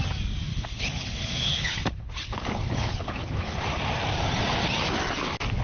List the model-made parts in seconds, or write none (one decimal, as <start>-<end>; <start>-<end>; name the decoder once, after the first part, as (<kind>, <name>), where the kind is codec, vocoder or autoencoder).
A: 0.5-3.8 (codec, HILCodec)